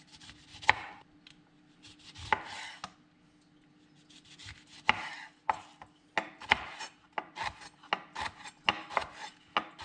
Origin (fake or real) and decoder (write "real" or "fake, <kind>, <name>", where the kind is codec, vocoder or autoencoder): real